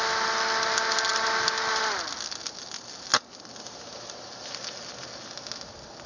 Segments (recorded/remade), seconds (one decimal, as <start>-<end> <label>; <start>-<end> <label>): 0.0-6.1 recorded